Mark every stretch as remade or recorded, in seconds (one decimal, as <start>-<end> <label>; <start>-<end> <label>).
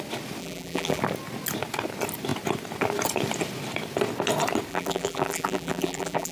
0.0-0.4 recorded; 0.4-1.0 remade; 1.0-4.7 recorded; 4.7-6.3 remade